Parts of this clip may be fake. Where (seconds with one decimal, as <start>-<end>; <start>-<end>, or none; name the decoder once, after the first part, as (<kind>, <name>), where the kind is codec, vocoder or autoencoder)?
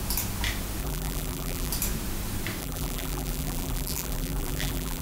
0.8-1.7 (vocoder, BigVGAN v2); 2.6-5.0